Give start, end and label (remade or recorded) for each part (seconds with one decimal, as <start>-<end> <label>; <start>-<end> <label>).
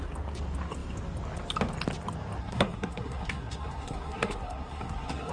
0.0-2.4 recorded; 2.4-5.3 remade